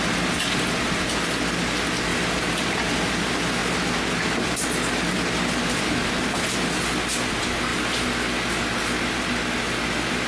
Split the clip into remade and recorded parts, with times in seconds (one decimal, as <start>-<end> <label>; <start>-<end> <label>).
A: 0.0-10.3 recorded